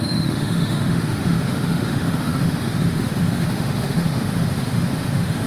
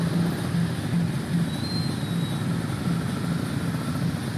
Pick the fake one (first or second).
first